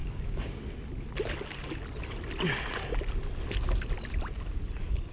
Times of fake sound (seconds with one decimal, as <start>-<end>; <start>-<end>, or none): 0.0-0.6